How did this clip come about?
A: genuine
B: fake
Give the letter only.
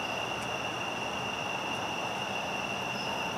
A